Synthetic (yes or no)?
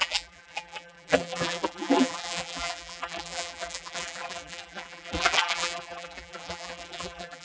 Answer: yes